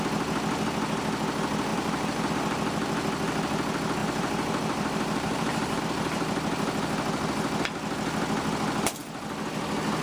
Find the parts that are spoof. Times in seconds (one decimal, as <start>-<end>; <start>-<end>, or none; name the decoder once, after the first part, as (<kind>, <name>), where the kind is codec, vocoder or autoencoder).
1.7-2.3 (vocoder, BigVGAN v2); 4.0-5.8